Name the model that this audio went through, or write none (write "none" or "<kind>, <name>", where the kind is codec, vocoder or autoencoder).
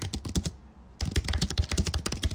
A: none